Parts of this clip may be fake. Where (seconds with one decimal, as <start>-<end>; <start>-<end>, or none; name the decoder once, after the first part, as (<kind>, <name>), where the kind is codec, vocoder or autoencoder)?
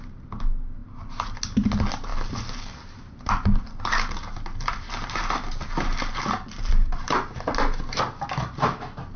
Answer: none